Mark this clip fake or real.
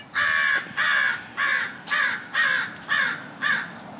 real